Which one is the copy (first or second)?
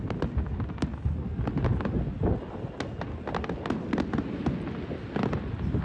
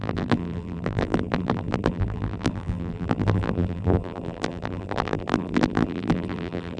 second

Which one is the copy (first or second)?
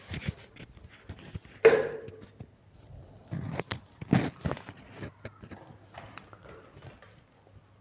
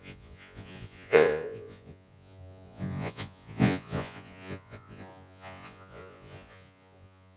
second